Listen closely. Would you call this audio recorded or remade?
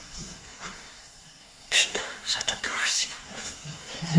remade